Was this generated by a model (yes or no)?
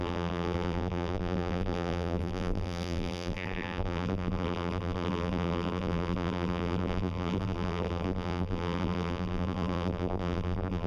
yes